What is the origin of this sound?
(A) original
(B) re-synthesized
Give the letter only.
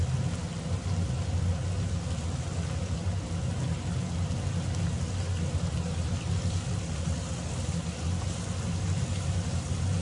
A